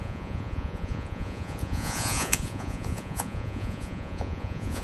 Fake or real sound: fake